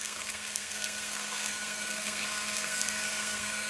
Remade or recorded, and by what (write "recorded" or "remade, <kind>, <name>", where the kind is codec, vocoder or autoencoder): remade, codec, SNAC